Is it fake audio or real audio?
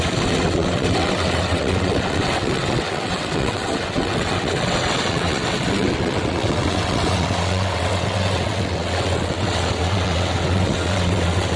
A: fake